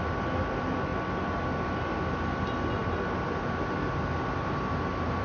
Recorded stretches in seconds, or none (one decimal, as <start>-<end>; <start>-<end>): 0.0-5.2

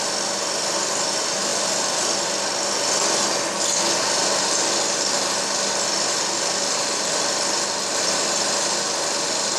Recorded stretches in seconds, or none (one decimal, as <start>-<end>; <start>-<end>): 0.0-9.6